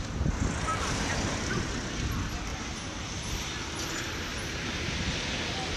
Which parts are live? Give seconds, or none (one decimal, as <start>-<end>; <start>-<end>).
0.0-0.7; 1.7-2.5; 3.3-4.3; 4.9-5.8